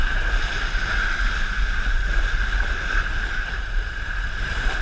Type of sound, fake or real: real